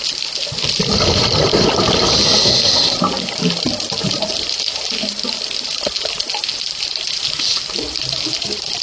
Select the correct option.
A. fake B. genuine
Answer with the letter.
B